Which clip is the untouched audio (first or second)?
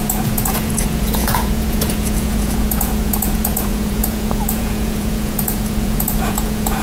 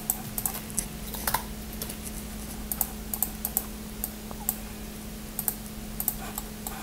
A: second